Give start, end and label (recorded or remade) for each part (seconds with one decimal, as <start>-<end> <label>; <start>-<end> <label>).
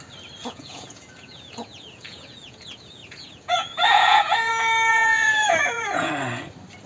0.0-0.4 recorded; 0.4-4.5 remade; 4.5-4.9 recorded; 4.9-6.1 remade; 6.1-6.9 recorded